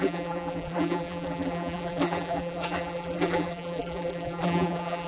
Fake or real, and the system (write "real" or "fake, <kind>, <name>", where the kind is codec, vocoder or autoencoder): fake, vocoder, BigVGAN v2